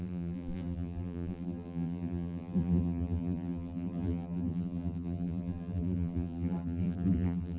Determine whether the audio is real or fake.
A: fake